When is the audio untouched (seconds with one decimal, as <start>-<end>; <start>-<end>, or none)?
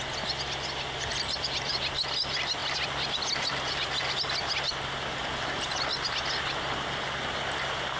0.0-1.1; 1.8-5.2; 5.9-8.0